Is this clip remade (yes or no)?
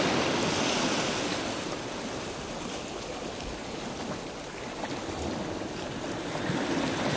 no